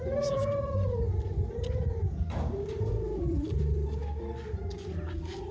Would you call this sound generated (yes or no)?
no